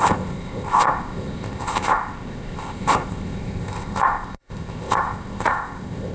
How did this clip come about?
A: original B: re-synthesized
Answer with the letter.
B